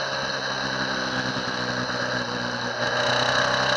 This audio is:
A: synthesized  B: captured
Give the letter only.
B